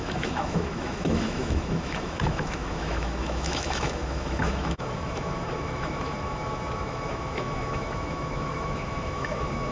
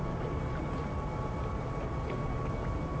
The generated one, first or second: first